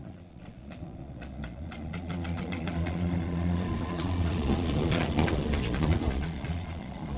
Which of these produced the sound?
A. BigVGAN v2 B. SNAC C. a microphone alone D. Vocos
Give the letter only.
D